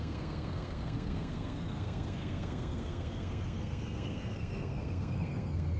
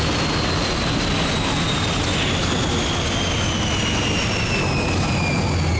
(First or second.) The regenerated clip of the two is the first